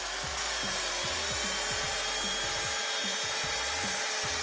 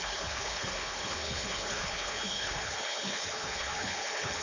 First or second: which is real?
first